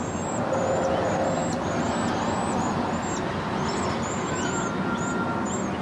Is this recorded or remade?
recorded